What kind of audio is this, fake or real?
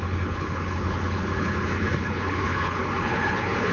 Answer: fake